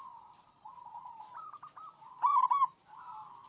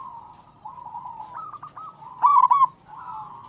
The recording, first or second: second